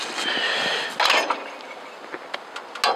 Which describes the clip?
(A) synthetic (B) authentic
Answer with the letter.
B